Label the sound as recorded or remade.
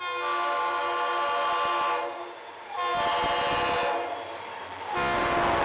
recorded